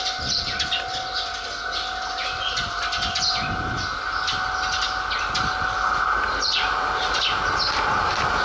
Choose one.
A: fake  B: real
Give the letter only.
B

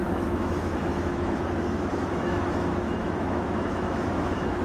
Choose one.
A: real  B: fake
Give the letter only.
B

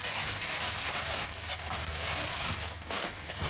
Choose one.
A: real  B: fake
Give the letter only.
B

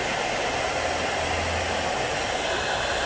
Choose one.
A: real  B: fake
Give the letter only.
A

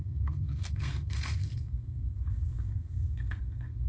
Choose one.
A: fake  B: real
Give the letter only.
A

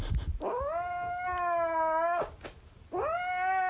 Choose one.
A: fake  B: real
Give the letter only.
B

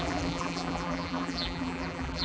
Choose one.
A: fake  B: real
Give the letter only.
A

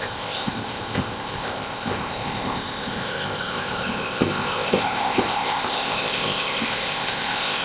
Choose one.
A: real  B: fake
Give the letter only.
B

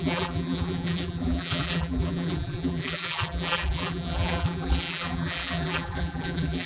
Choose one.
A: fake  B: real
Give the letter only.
A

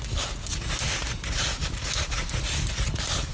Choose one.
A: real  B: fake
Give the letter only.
A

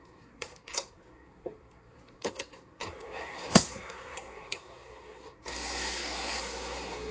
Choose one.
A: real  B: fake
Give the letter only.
B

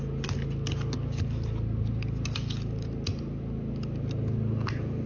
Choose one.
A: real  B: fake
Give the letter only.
A